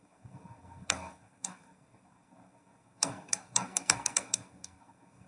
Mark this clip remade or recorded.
remade